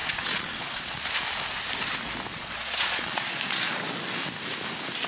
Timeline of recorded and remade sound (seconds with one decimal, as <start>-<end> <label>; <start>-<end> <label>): 0.0-1.0 remade; 1.0-2.3 recorded; 2.3-3.3 remade; 3.3-5.1 recorded